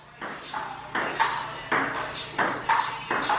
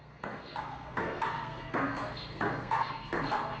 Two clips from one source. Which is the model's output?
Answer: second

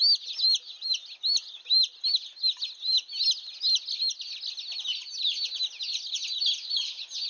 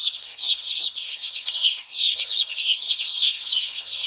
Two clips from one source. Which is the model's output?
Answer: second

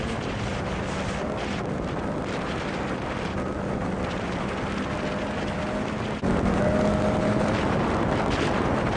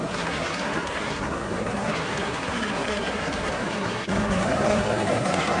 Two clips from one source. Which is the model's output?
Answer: second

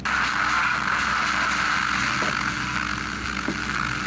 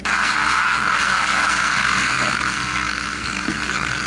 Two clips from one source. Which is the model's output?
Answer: second